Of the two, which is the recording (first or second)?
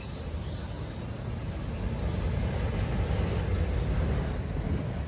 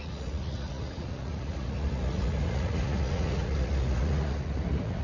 first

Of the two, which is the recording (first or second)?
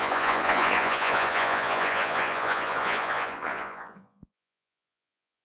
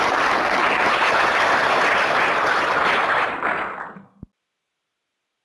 second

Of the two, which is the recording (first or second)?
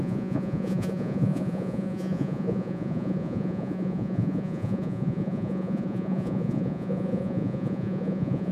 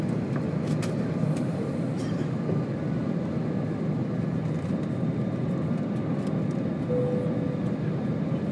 second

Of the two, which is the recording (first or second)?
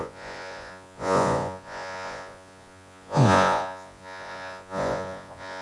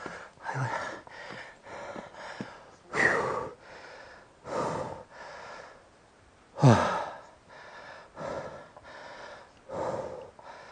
second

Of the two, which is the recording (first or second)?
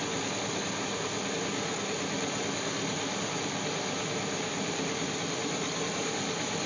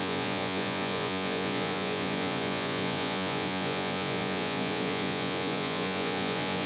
first